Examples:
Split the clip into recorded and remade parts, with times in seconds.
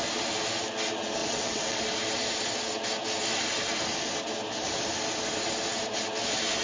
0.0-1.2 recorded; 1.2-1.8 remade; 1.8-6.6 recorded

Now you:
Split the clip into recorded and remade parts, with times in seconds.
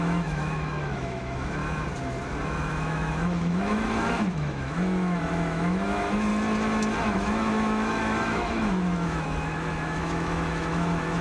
0.0-1.6 remade; 1.6-2.6 recorded; 2.6-6.3 remade; 6.3-7.0 recorded; 7.0-11.2 remade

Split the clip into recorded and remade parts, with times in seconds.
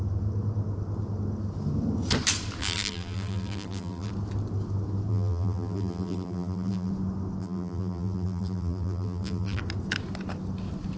0.0-2.6 recorded; 2.6-4.1 remade; 4.1-5.1 recorded; 5.1-6.9 remade; 6.9-7.4 recorded; 7.4-9.6 remade; 9.6-11.0 recorded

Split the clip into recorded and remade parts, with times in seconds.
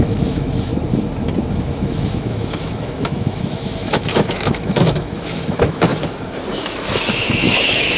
0.0-0.7 remade; 0.7-1.5 recorded; 1.5-5.9 remade; 5.9-6.5 recorded; 6.5-8.0 remade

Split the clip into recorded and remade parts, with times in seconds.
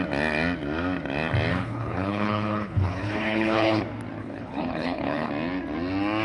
0.0-1.5 recorded; 1.5-3.8 remade; 3.8-4.2 recorded; 4.2-5.3 remade; 5.3-6.2 recorded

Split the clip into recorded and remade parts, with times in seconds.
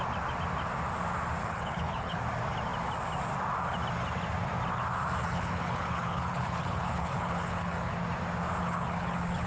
0.0-1.4 recorded; 1.4-2.2 remade; 2.2-5.2 recorded; 5.2-7.9 remade; 7.9-8.6 recorded; 8.6-9.5 remade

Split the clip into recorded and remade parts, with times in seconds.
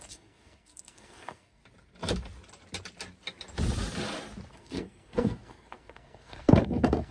0.0-1.6 remade; 1.6-4.5 recorded; 4.5-7.1 remade